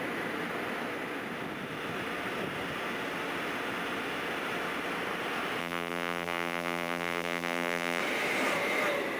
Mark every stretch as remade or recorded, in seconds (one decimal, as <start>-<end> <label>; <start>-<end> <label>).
0.0-5.6 recorded; 5.6-8.0 remade; 8.0-9.2 recorded